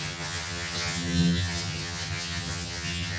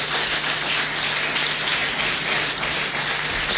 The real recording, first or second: second